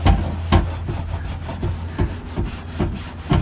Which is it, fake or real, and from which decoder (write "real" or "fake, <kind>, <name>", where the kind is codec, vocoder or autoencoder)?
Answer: real